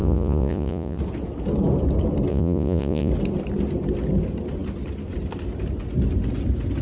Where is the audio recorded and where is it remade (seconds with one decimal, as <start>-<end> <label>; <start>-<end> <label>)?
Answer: 0.0-1.0 remade; 1.0-2.3 recorded; 2.3-3.1 remade; 3.1-6.8 recorded